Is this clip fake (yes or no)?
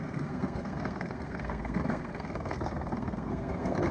yes